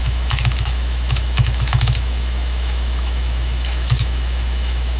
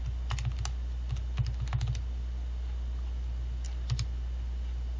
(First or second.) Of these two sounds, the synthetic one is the first